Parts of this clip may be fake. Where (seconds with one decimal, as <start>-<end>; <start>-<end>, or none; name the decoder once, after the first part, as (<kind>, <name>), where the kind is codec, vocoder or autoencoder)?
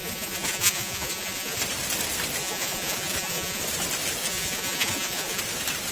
0.0-1.6 (vocoder, Vocos); 2.4-3.6; 4.2-5.4